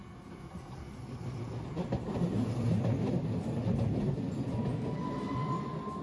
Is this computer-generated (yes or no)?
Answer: no